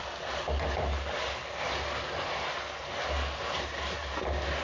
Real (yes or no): yes